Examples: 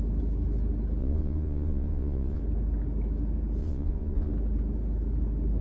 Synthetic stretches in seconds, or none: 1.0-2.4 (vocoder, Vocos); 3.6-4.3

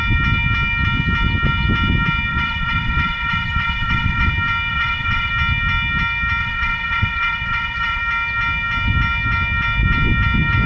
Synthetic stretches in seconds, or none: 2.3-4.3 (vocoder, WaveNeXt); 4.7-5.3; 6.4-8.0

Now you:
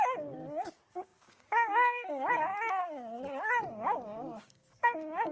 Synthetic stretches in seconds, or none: 0.0-2.5 (codec, DAC); 3.7-5.3

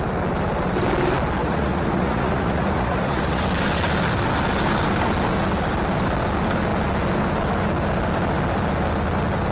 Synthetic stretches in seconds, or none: 1.4-3.4 (vocoder, Vocos)